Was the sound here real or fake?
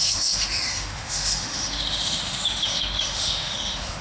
fake